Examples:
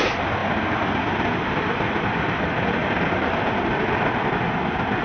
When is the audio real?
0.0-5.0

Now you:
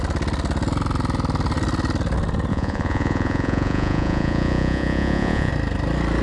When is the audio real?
0.0-2.5; 5.5-6.2

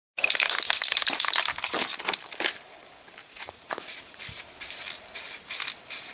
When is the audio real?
0.0-3.2; 4.2-6.1

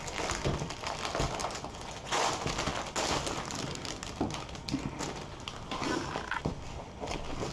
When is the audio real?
0.0-1.4; 2.3-7.5